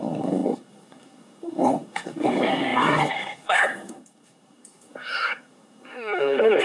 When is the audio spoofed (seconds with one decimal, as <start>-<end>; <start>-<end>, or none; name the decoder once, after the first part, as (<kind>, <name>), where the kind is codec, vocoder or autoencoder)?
0.0-6.6 (codec, SNAC)